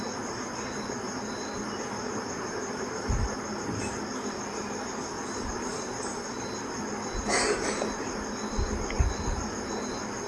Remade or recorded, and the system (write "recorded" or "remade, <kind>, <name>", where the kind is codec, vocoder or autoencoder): recorded